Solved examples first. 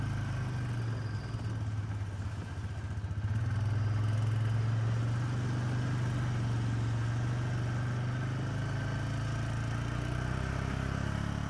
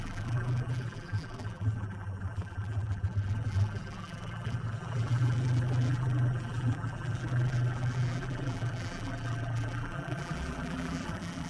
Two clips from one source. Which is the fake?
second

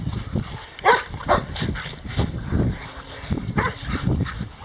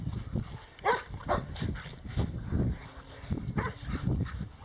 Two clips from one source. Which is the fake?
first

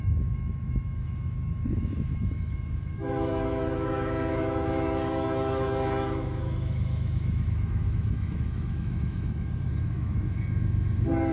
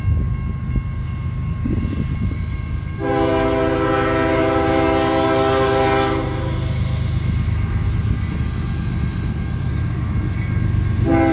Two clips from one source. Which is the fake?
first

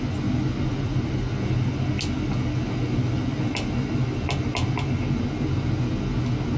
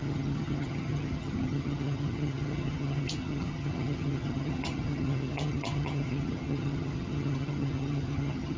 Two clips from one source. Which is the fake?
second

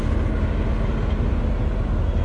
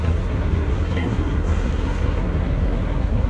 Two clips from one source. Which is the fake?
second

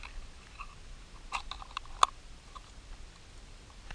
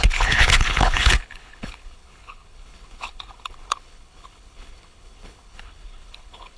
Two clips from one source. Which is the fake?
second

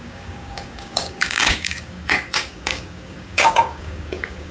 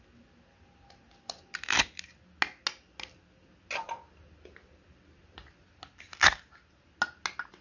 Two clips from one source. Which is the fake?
first